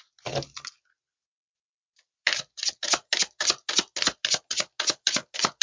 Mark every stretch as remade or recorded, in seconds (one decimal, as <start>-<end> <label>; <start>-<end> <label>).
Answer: 0.0-5.6 recorded